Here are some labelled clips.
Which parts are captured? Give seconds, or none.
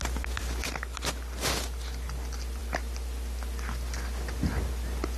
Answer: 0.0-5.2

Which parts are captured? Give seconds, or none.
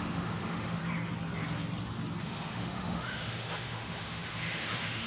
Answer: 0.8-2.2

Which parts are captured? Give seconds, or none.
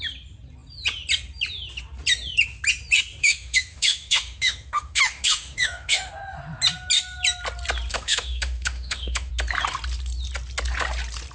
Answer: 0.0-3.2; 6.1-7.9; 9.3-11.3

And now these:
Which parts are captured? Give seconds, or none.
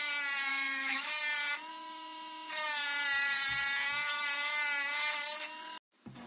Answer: 0.0-0.5; 1.2-1.7; 2.5-6.3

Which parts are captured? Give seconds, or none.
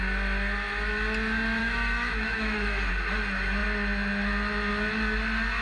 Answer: 0.0-1.6; 2.9-5.6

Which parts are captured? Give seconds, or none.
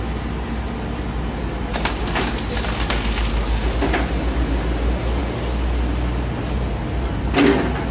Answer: 0.0-7.9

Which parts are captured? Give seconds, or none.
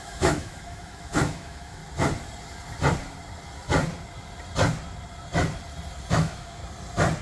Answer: 1.8-6.1; 6.6-7.2